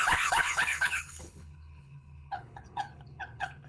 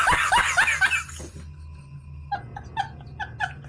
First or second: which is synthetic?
first